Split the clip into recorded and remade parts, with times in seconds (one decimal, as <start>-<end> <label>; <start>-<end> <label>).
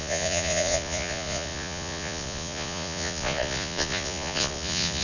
0.0-5.0 remade